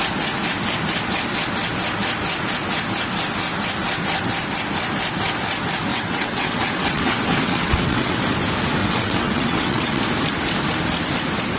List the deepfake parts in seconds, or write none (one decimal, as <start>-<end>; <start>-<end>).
5.9-8.2; 8.8-10.0